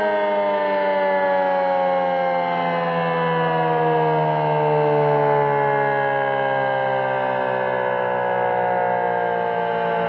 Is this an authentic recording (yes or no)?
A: yes